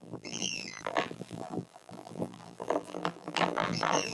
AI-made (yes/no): yes